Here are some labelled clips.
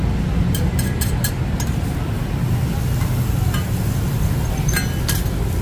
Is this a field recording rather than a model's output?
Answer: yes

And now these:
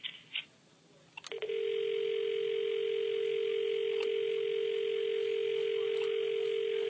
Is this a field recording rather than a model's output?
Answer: yes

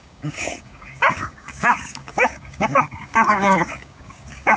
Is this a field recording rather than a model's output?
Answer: no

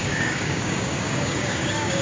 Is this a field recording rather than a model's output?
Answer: no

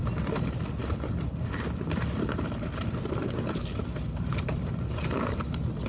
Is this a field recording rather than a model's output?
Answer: yes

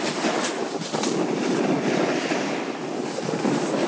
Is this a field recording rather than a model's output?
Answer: yes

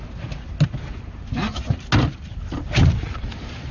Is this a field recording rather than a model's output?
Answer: yes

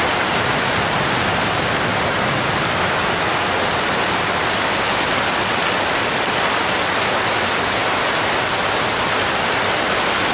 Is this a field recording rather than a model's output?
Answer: yes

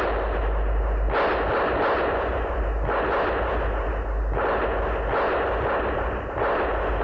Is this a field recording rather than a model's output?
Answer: yes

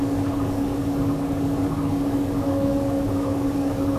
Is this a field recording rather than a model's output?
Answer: no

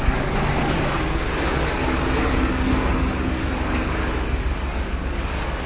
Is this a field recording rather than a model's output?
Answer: no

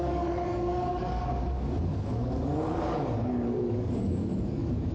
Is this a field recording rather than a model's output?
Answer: no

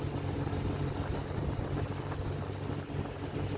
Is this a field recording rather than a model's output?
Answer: yes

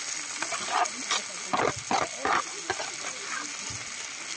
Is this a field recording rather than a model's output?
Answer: yes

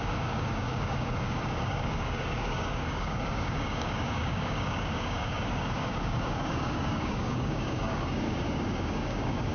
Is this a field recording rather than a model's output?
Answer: no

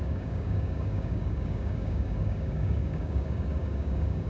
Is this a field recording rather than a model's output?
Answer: no